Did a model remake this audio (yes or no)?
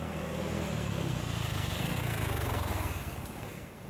yes